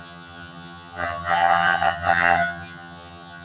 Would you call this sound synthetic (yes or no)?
yes